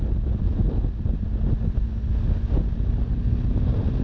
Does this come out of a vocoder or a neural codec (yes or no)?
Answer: no